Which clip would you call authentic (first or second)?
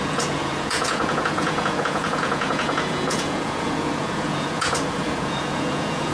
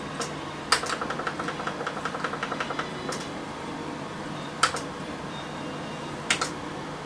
second